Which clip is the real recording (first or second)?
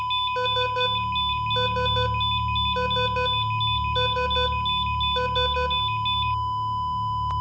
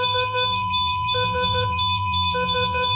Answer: first